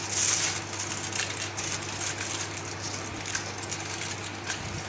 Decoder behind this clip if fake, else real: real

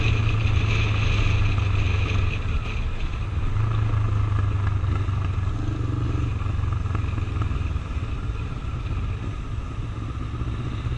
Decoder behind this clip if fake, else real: real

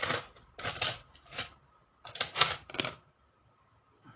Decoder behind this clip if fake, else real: real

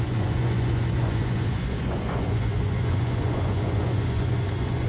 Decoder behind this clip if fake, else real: fake, vocoder, Vocos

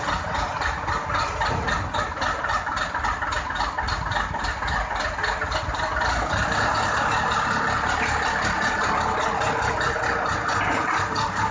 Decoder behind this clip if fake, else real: real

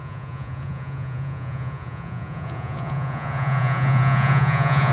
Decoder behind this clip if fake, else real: fake, vocoder, Vocos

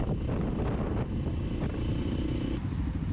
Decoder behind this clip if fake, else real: real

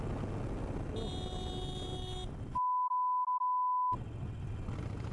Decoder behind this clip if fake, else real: real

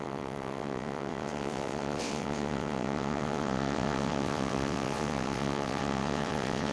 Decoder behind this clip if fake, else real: fake, vocoder, WaveNeXt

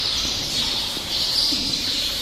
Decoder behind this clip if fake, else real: fake, vocoder, BigVGAN v2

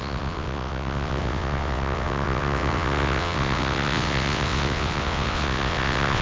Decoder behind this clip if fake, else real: fake, vocoder, WaveNeXt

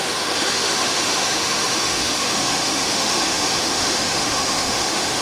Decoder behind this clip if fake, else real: fake, autoencoder, DAC-VAE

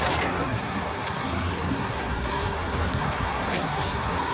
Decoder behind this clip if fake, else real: fake, codec, SNAC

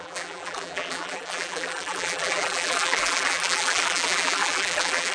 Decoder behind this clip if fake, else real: fake, vocoder, BigVGAN v2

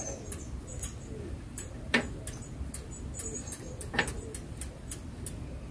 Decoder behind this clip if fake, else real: real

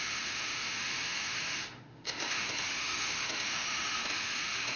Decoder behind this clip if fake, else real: fake, autoencoder, DAC-VAE